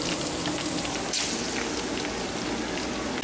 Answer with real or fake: real